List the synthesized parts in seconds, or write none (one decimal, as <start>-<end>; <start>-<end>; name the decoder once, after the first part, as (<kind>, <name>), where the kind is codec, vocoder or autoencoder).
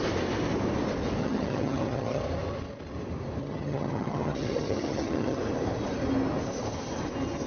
1.2-2.2 (vocoder, HiFi-GAN); 3.4-5.4